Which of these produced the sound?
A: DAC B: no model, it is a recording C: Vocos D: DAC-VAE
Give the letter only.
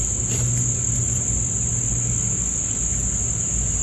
B